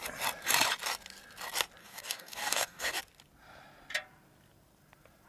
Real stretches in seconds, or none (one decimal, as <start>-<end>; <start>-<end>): 0.0-1.8; 3.0-5.3